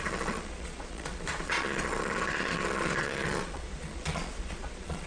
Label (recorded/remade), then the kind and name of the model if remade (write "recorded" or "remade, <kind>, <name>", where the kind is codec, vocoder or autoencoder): remade, vocoder, Vocos